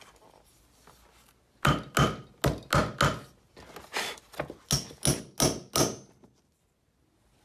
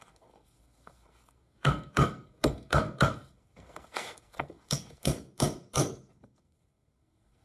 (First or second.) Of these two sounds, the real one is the first